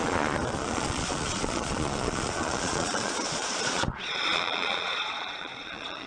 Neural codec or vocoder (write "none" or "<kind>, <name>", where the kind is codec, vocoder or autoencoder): vocoder, Vocos